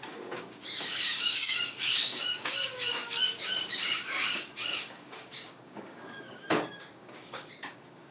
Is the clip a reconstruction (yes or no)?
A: yes